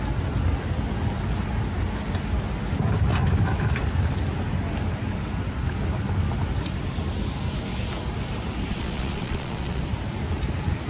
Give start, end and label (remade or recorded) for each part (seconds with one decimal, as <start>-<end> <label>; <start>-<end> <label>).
0.0-8.7 recorded; 8.7-9.8 remade; 9.8-10.9 recorded